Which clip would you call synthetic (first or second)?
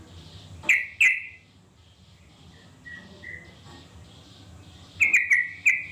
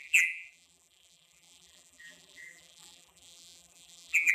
second